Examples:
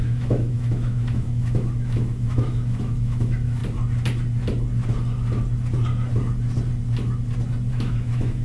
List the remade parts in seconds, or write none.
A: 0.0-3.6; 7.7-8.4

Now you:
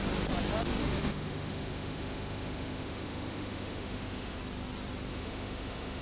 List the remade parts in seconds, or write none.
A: 0.8-4.4; 5.1-6.0